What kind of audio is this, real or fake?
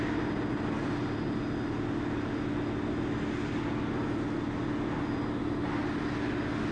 real